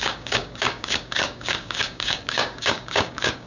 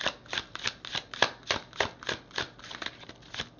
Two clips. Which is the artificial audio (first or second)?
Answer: first